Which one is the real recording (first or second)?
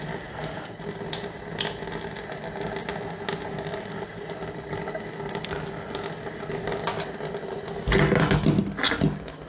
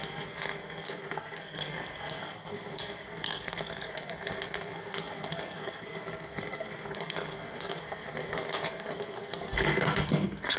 first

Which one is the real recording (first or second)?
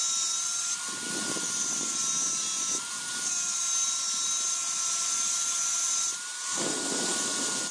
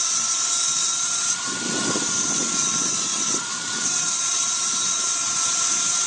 first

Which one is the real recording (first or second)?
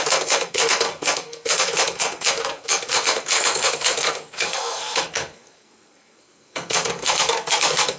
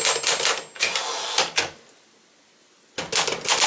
second